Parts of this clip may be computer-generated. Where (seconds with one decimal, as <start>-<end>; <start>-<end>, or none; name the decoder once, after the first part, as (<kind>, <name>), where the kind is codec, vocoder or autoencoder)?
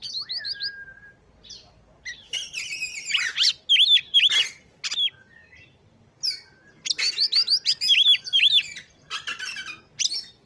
none